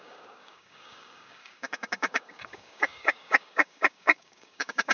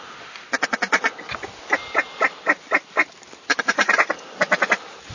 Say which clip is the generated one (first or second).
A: first